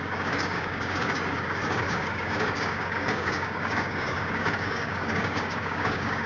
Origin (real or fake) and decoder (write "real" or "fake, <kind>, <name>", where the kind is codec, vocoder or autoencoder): fake, codec, DAC